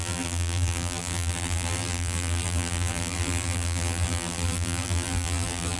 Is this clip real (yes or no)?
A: no